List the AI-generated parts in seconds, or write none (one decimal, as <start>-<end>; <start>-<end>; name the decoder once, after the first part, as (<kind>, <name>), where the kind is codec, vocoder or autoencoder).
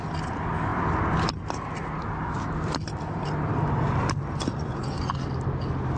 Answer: 4.5-5.1 (vocoder, Vocos)